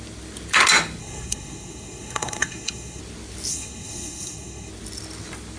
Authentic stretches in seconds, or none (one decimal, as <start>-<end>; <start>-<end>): 0.0-1.0; 3.0-3.5; 4.7-5.6